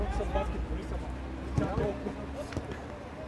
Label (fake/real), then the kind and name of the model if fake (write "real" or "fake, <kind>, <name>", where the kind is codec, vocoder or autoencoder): real